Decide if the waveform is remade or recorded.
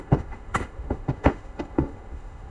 remade